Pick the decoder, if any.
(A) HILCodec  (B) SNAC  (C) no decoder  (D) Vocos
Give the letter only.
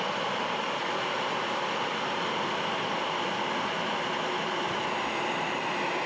C